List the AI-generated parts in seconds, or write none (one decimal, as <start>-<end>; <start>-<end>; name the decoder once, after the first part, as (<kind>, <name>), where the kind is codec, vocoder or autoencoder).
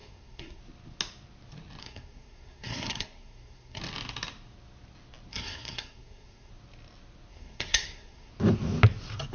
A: 0.0-0.6 (codec, SNAC); 1.8-3.8; 5.3-6.5; 7.3-8.3